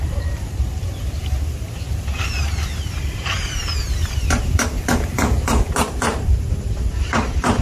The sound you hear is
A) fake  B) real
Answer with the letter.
A